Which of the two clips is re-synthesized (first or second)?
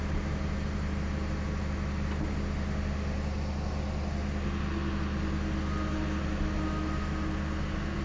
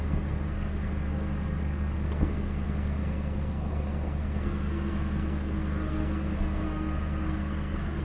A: second